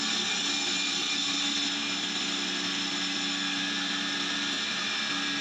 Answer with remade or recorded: recorded